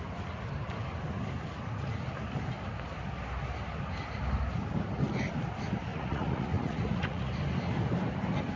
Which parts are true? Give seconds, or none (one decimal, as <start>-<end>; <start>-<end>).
0.0-5.9; 7.3-8.6